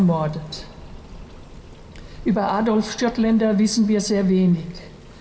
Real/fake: real